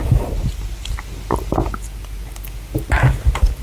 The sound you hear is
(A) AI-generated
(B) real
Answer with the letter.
B